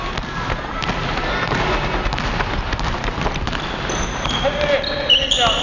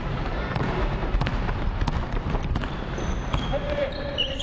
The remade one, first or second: second